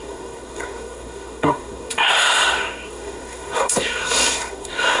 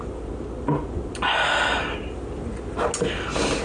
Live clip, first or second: second